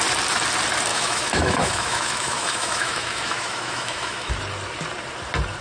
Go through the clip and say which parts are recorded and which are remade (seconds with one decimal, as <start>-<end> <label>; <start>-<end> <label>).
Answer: 0.0-0.9 recorded; 0.9-4.3 remade; 4.3-5.6 recorded